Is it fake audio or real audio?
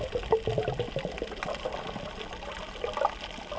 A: real